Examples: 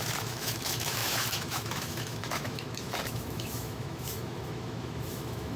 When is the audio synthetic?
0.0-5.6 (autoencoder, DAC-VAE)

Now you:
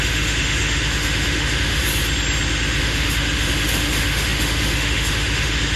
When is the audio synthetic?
0.0-1.8 (autoencoder, DAC-VAE); 2.8-5.8

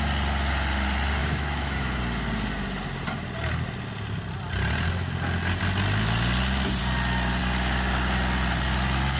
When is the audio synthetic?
1.2-2.0 (autoencoder, DAC-VAE)